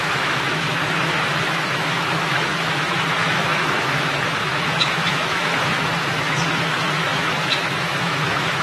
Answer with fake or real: fake